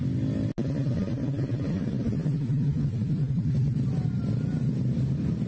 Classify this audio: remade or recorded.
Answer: recorded